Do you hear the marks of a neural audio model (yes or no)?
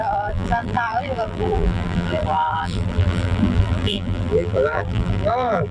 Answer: yes